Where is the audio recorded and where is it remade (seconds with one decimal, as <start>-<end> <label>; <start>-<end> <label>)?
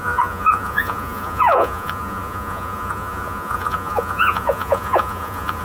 0.0-5.6 remade